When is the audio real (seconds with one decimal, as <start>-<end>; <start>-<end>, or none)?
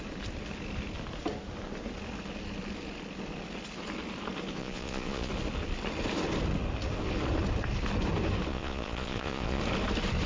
0.0-4.6; 5.3-8.5; 9.6-10.3